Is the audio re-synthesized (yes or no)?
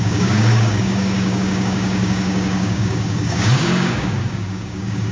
yes